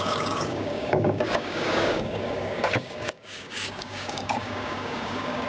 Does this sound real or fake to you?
fake